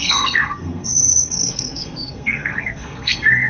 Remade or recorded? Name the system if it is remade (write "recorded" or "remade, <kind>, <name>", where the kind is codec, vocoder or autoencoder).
remade, codec, SNAC